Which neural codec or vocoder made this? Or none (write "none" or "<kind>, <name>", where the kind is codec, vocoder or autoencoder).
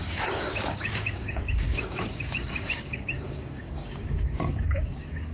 codec, DAC